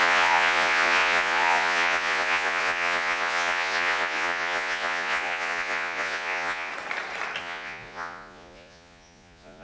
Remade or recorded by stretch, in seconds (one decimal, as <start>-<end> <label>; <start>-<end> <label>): 0.0-6.7 remade; 6.7-7.4 recorded; 7.4-9.6 remade